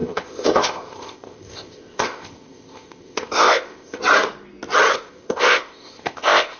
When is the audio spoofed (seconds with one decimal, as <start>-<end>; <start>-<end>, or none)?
0.0-4.0; 4.9-6.6